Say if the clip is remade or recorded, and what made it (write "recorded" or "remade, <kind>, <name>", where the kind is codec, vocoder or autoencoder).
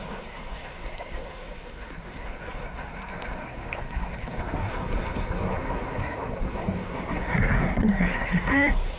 remade, codec, SNAC